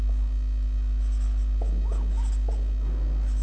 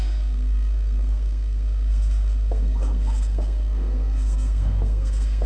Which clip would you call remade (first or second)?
second